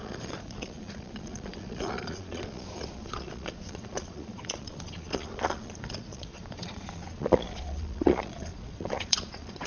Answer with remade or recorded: remade